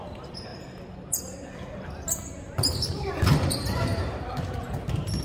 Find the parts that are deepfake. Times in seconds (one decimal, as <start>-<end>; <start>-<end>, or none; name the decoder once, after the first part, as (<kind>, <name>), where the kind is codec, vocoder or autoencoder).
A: 0.0-0.5 (vocoder, BigVGAN v2); 2.1-5.2